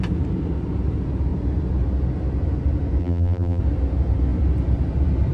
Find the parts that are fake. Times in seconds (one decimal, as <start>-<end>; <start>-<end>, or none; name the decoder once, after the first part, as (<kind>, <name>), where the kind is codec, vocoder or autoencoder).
3.0-3.6 (vocoder, BigVGAN v2)